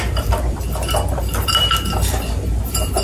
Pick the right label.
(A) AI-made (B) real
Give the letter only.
B